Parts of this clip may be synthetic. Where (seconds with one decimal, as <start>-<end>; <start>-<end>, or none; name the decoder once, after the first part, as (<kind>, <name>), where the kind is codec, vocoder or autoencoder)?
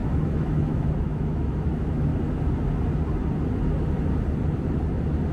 0.0-2.1 (autoencoder, DAC-VAE)